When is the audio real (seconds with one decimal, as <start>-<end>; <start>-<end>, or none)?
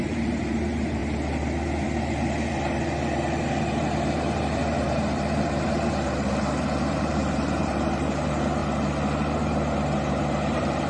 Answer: 1.0-1.8; 8.6-10.1